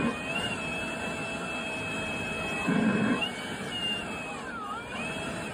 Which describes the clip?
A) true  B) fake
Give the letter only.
B